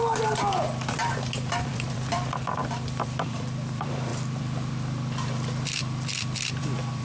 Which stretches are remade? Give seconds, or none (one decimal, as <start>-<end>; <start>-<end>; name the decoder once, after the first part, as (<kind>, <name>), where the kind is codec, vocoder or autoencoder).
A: 0.0-7.0 (vocoder, BigVGAN v2)